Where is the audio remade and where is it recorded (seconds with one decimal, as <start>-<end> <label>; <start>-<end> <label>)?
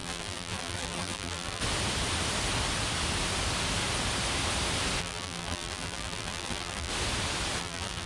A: 0.0-1.6 remade; 1.6-5.0 recorded; 5.0-6.9 remade; 6.9-7.6 recorded; 7.6-8.1 remade